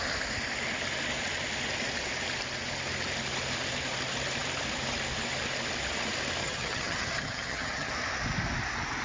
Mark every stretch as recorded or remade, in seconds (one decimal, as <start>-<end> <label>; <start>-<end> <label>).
0.0-6.4 recorded; 6.4-7.9 remade; 7.9-9.0 recorded